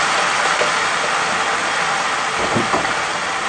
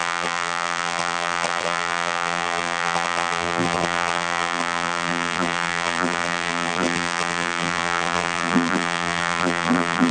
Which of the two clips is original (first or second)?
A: first